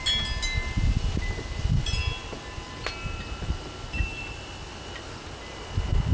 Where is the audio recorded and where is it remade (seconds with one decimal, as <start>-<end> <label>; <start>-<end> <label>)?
0.0-6.1 recorded